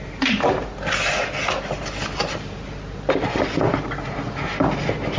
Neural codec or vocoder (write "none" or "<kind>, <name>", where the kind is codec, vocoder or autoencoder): none